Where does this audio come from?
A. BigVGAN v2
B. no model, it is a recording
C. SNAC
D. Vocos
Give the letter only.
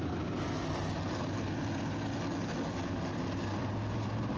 B